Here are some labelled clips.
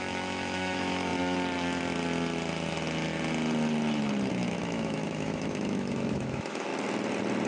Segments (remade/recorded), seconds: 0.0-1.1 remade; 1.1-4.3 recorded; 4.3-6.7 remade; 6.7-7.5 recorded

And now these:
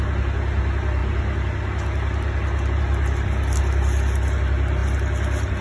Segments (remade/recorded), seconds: 0.0-5.6 recorded

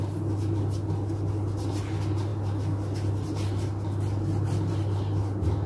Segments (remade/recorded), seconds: 0.0-5.7 recorded

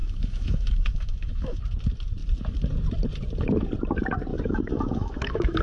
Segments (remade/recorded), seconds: 0.0-1.6 remade; 1.6-4.3 recorded; 4.3-5.6 remade

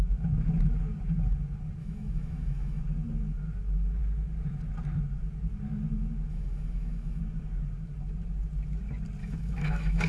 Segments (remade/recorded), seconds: 0.0-1.8 recorded; 1.8-2.8 remade; 2.8-6.3 recorded; 6.3-7.2 remade; 7.2-9.2 recorded; 9.2-10.1 remade

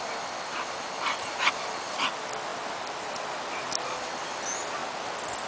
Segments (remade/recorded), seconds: 0.0-5.5 recorded

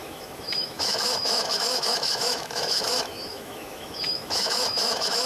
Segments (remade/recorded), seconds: 0.0-5.3 remade

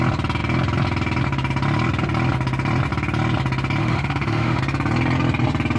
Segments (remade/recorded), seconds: 0.0-3.8 recorded; 3.8-4.6 remade; 4.6-5.8 recorded